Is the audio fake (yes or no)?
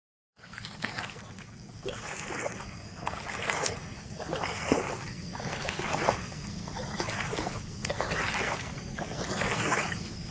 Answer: yes